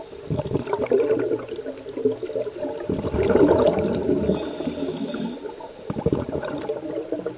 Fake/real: real